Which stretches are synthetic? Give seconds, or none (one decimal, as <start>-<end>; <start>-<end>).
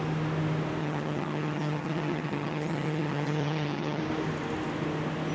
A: 0.8-4.0